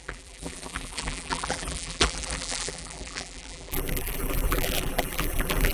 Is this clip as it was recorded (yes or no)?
no